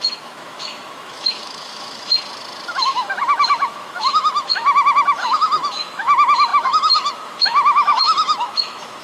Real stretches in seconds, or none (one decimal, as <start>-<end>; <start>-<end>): 2.1-2.7